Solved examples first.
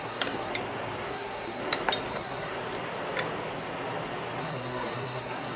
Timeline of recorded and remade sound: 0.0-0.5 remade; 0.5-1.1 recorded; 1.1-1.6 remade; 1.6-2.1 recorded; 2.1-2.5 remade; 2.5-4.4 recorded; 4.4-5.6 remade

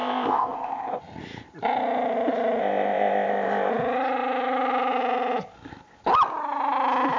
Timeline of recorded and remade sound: 0.0-1.0 remade; 1.0-2.6 recorded; 2.6-3.7 remade; 3.7-7.2 recorded

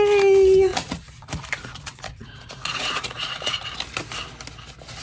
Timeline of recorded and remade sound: 0.0-0.7 recorded; 0.7-3.7 remade; 3.7-5.0 recorded